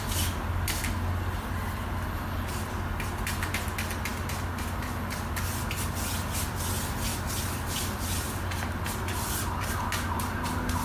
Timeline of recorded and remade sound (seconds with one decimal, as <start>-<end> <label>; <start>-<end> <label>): 0.0-10.8 recorded